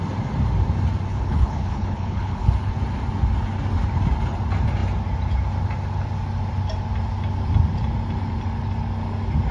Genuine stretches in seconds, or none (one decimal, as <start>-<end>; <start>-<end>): 0.0-1.1; 2.7-9.5